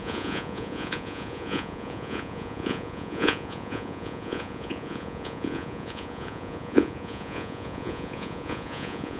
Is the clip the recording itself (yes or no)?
no